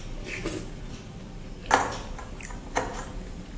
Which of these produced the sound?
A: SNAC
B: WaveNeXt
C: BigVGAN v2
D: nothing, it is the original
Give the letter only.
D